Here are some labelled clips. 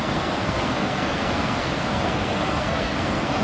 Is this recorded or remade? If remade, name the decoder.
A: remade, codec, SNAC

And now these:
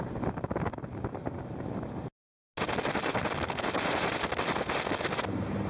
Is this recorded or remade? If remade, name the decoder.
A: recorded